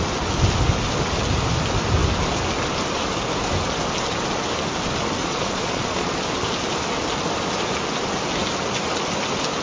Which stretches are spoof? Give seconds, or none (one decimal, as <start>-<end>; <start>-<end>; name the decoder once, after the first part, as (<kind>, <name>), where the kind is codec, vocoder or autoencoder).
5.2-6.3 (vocoder, Vocos)